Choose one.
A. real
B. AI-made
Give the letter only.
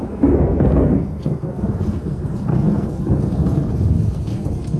B